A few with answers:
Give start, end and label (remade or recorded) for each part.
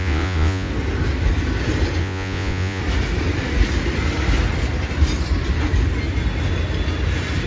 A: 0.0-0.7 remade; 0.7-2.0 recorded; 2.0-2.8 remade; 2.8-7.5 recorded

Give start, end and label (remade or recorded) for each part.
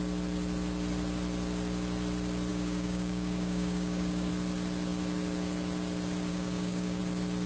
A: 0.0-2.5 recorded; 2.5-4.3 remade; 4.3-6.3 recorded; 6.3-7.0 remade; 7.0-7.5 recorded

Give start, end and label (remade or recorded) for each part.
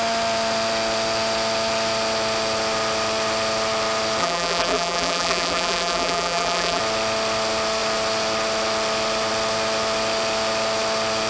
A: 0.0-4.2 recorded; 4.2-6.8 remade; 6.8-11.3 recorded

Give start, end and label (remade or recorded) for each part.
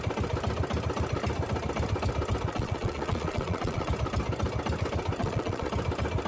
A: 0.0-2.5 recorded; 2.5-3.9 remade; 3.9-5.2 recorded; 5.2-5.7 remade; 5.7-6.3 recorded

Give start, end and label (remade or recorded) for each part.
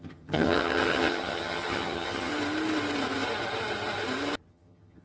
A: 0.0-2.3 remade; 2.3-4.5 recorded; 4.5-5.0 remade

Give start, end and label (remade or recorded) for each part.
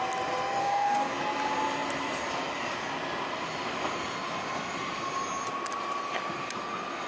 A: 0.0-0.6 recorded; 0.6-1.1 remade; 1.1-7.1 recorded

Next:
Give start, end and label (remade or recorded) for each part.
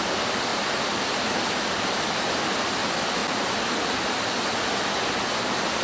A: 0.0-5.8 recorded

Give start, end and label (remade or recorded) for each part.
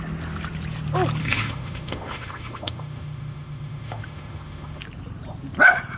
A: 0.0-1.2 recorded; 1.2-4.8 remade; 4.8-6.0 recorded